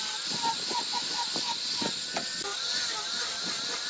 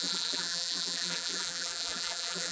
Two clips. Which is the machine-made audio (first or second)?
second